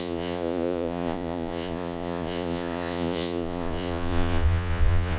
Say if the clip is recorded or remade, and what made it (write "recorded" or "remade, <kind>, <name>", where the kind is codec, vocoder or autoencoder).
remade, vocoder, Vocos